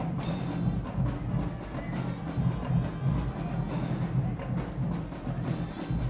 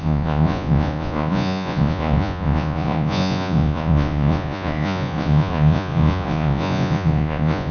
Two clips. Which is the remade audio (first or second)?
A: second